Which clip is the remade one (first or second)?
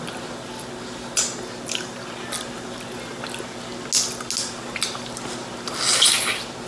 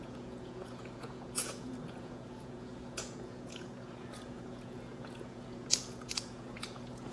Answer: second